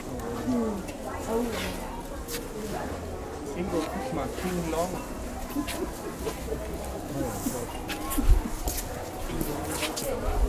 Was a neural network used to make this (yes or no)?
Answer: no